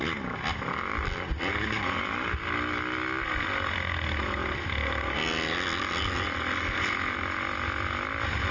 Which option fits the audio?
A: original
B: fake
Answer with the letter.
A